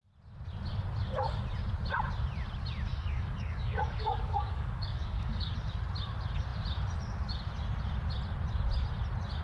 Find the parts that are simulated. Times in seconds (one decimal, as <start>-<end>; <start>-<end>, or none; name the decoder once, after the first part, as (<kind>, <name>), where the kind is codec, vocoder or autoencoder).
2.9-5.5 (codec, DAC)